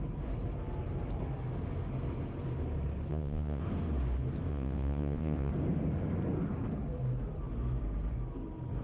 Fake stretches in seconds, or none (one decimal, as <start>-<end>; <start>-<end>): 3.1-3.6; 4.5-5.5